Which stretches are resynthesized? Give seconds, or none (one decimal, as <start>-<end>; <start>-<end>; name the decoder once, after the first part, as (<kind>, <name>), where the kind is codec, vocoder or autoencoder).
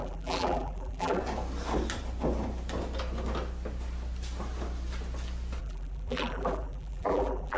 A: 0.0-1.2 (vocoder, BigVGAN v2); 5.6-7.6